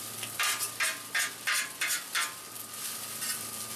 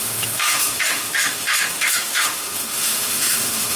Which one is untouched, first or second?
first